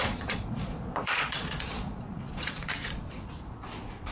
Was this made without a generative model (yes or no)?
no